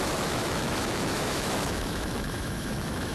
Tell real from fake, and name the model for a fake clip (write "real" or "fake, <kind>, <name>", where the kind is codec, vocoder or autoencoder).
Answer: fake, autoencoder, DAC-VAE